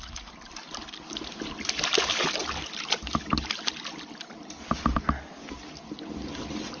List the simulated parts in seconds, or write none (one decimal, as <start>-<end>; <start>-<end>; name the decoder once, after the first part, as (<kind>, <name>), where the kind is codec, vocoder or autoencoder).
none